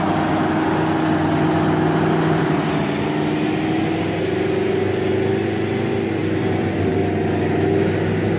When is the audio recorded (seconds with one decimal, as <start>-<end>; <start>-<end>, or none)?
0.0-8.4